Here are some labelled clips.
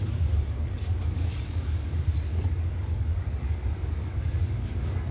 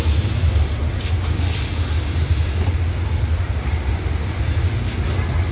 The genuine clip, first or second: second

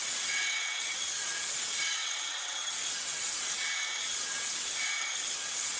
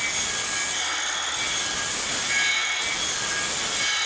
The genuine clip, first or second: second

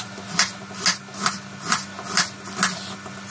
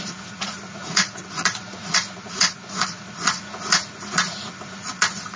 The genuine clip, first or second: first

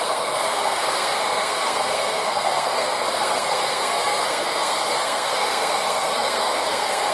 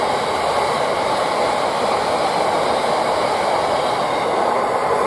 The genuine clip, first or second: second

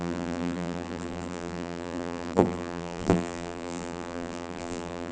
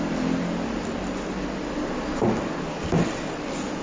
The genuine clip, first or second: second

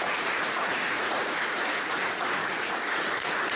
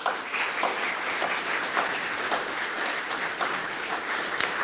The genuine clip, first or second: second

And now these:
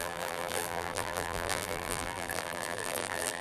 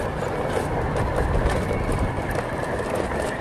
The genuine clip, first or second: second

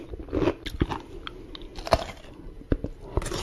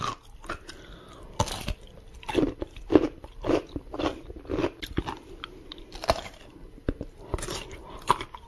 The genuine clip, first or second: first